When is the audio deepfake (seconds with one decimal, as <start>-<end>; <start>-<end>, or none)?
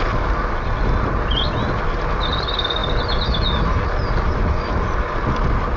none